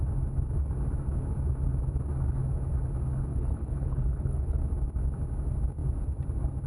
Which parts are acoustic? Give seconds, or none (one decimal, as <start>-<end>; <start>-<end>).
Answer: 0.0-3.3; 4.6-6.7